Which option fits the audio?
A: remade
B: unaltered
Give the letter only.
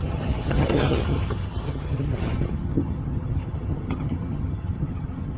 A